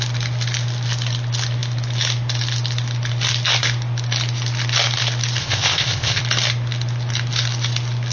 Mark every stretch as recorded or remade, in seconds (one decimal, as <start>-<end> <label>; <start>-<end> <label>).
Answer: 0.0-5.4 recorded; 5.4-6.2 remade; 6.2-8.1 recorded